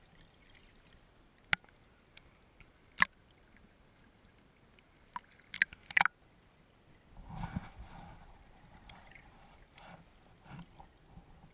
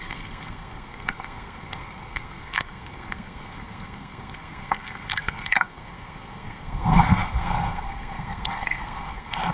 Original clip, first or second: first